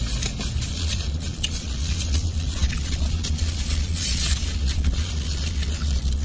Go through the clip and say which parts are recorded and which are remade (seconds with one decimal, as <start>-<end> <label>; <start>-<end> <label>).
0.0-0.7 recorded; 0.7-6.2 remade